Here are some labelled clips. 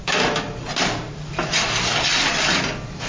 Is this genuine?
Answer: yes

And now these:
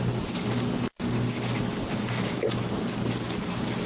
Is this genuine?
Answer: yes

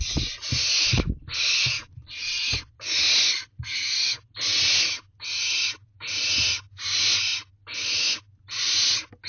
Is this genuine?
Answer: yes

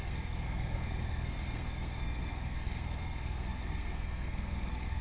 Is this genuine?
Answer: no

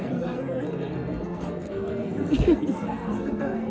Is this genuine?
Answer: no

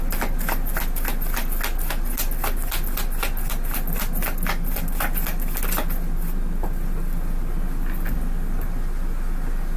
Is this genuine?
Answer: yes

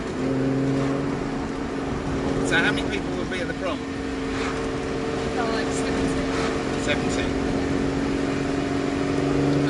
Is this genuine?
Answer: yes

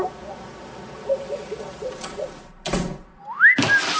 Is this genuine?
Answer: yes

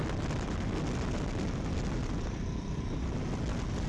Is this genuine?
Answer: yes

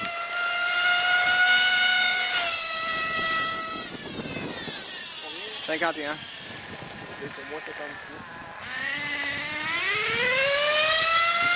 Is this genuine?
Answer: yes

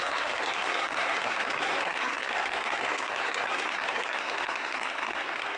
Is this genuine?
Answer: no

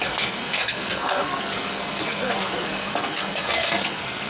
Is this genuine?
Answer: no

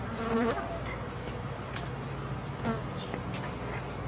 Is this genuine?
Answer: yes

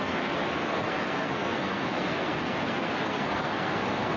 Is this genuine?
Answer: no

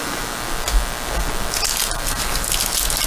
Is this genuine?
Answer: yes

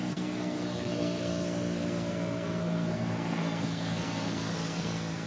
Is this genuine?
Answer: no